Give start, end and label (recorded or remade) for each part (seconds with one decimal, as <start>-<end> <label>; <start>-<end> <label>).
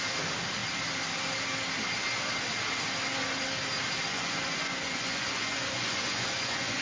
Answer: 0.0-4.1 recorded; 4.1-6.8 remade